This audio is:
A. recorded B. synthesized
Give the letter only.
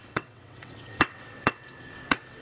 B